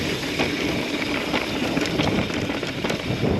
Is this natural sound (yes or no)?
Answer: no